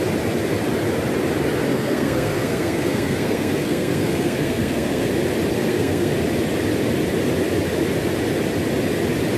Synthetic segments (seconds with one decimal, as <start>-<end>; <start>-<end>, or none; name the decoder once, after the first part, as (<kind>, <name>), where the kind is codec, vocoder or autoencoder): 1.7-5.1 (codec, SNAC); 5.5-6.1